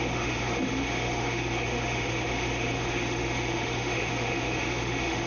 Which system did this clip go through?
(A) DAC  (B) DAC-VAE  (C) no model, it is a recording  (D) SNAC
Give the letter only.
B